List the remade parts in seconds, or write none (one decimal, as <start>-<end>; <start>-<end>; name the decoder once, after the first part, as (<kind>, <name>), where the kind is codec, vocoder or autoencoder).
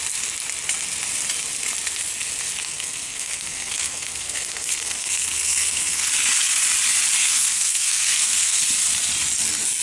2.6-6.1 (codec, SNAC); 7.2-8.6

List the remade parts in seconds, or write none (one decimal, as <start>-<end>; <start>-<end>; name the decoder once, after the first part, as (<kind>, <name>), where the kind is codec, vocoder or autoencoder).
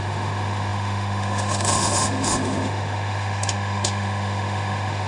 0.0-5.1 (autoencoder, DAC-VAE)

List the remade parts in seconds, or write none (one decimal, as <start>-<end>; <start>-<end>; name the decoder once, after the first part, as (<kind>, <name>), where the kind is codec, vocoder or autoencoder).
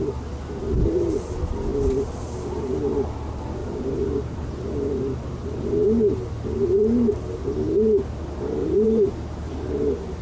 3.6-4.4 (vocoder, BigVGAN v2); 8.6-9.7